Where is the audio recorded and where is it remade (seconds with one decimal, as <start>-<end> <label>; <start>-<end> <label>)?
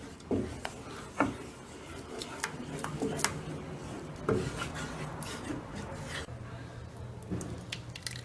0.0-8.2 recorded